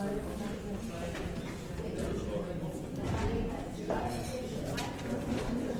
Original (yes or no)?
yes